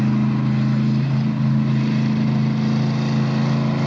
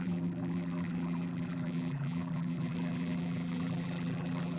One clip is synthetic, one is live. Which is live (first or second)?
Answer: first